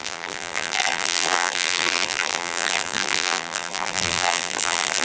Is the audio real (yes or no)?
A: no